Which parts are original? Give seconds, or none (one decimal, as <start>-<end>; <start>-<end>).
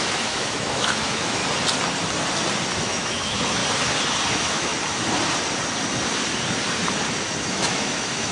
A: 1.4-2.8; 3.6-4.3; 4.7-7.5